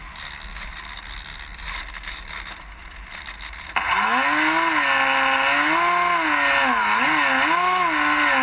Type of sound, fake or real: real